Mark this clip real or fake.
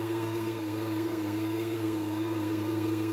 fake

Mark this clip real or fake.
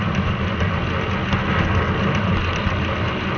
real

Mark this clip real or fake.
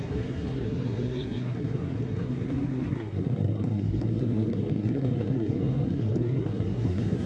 fake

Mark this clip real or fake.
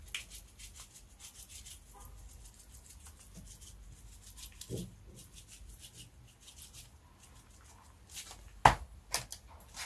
real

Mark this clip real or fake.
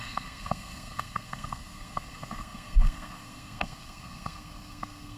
fake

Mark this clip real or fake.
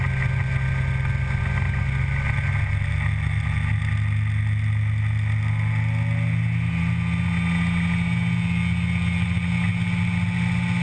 real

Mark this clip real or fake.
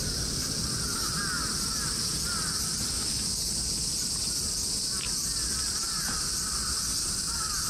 real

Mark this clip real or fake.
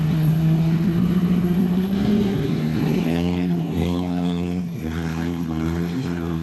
fake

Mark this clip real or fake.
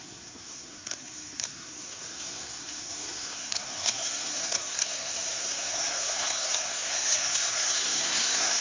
fake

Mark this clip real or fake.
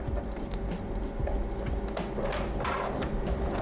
real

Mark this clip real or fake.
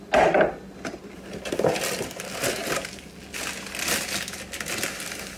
real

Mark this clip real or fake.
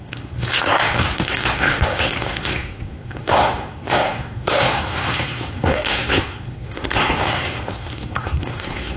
fake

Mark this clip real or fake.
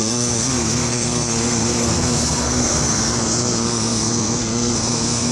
fake